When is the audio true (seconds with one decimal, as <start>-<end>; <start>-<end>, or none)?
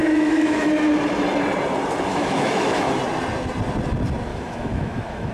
0.7-2.1; 3.0-4.3